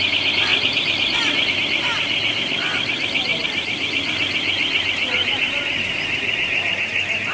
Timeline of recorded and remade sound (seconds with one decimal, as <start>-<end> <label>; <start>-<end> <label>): 0.0-7.3 recorded